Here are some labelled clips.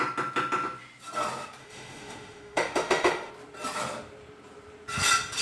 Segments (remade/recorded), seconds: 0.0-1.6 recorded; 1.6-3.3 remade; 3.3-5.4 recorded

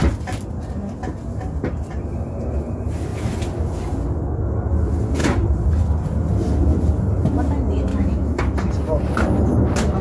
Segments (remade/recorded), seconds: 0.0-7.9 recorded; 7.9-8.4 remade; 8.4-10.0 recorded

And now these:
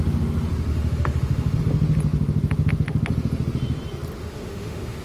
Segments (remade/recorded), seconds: 0.0-0.7 recorded; 0.7-1.6 remade; 1.6-4.2 recorded; 4.2-5.0 remade